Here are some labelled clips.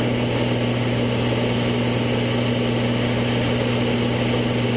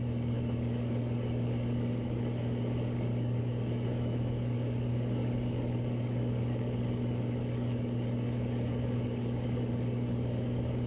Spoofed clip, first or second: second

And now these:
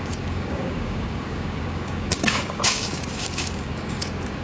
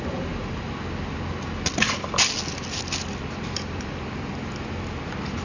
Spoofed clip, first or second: first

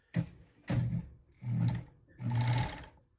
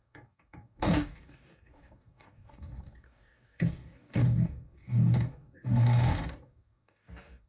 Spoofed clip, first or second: second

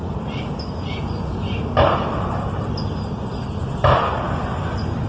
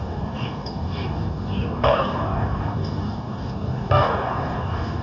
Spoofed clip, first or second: second